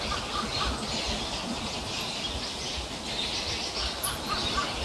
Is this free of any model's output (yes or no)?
yes